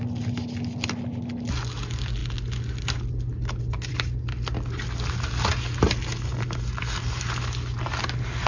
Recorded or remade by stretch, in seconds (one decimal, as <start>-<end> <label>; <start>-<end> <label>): 0.0-8.5 recorded